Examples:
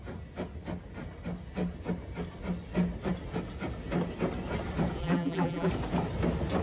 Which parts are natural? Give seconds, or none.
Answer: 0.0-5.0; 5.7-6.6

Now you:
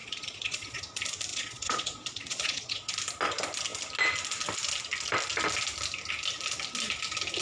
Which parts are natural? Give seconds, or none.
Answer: 0.8-1.3; 2.9-7.4

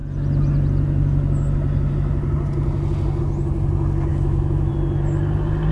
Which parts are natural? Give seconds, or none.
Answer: 0.0-4.1; 4.7-5.7

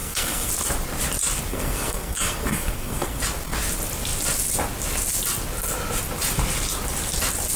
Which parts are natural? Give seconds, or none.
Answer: 0.5-1.5; 3.2-7.6

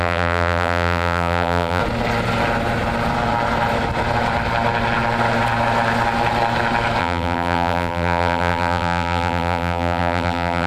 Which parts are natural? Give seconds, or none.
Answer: 1.8-7.0

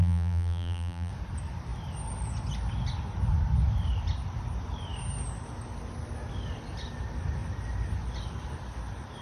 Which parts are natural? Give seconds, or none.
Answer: 1.1-9.2

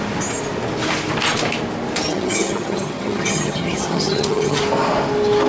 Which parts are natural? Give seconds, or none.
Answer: 0.0-2.0; 4.6-5.5

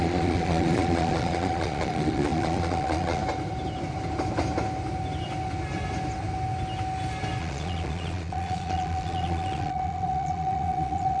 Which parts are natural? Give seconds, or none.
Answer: 3.2-7.4